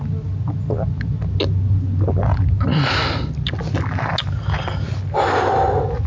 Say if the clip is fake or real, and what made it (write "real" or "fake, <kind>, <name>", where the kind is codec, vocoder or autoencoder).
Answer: real